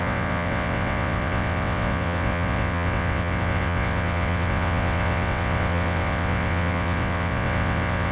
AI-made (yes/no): yes